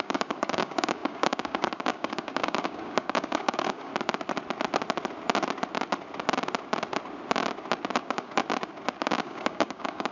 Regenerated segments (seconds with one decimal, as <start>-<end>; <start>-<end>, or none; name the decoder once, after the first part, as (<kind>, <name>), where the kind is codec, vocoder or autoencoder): 0.0-3.9 (codec, DAC); 8.0-8.4; 9.0-10.1